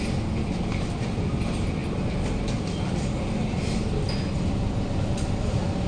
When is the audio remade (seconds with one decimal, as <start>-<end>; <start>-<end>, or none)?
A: 1.8-4.1